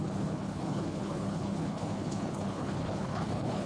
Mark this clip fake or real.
fake